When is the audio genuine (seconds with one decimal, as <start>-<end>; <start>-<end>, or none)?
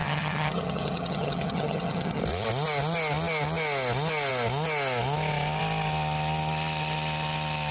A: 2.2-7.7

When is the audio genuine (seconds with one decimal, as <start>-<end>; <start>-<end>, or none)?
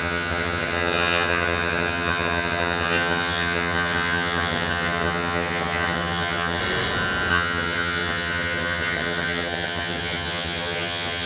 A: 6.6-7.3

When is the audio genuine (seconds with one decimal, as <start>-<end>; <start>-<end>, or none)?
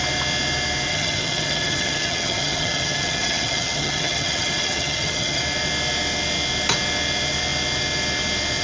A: 0.0-0.9; 5.4-8.6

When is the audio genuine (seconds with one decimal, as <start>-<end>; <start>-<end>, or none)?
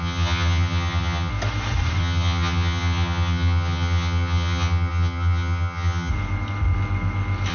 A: 1.3-2.0; 6.1-7.5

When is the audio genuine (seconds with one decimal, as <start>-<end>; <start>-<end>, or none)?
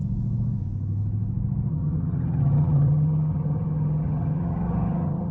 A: 0.0-1.7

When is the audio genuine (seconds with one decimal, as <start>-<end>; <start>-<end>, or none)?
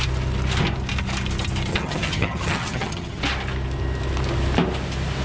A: 0.0-1.7; 3.2-5.2